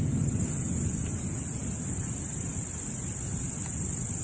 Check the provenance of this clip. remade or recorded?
recorded